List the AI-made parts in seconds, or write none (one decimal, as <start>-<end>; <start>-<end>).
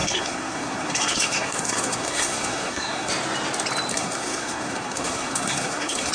0.0-3.1; 3.9-6.1